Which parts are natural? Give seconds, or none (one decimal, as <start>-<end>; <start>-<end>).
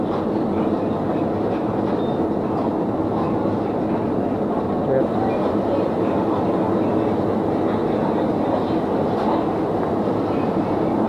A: 0.0-11.1